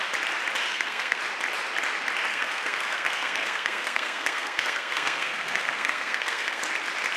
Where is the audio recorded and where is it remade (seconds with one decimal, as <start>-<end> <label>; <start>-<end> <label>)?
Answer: 0.0-0.7 recorded; 0.7-1.2 remade; 1.2-2.3 recorded; 2.3-6.6 remade; 6.6-7.2 recorded